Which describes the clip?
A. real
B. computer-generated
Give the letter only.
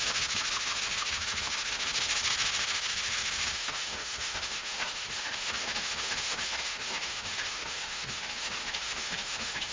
B